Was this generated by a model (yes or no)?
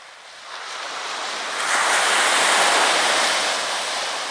no